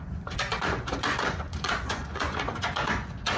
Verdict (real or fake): fake